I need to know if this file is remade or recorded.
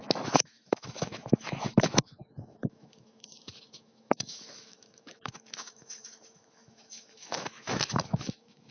remade